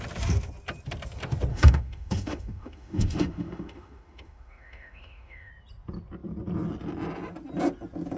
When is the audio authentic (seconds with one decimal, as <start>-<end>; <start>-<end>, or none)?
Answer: 0.0-1.5; 5.5-8.2